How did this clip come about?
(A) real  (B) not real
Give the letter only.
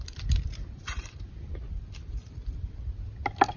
B